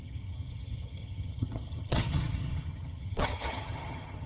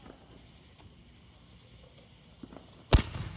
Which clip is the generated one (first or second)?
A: first